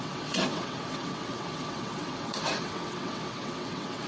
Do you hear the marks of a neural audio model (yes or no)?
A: yes